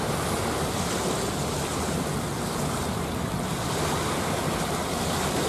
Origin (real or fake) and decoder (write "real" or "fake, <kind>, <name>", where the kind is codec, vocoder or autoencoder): real